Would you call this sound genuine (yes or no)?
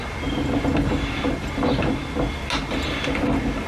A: yes